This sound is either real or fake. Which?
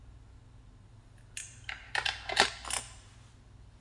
real